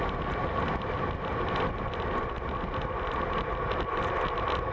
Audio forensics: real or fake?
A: real